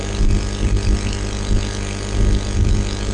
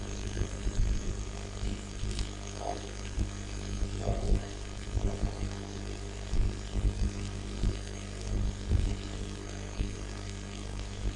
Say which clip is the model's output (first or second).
second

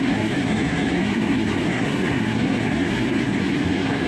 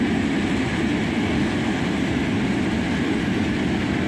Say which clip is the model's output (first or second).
first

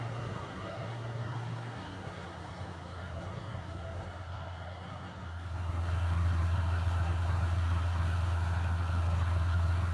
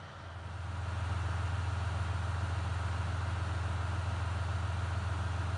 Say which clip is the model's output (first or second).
first